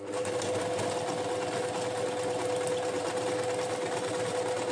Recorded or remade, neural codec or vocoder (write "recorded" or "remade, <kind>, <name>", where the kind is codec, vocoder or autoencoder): recorded